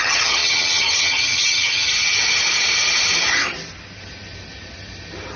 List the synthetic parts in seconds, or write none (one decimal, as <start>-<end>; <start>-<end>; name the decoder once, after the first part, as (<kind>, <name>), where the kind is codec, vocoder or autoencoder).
0.0-1.9 (vocoder, HiFi-GAN)